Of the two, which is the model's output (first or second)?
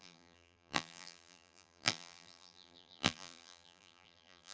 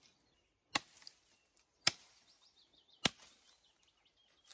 first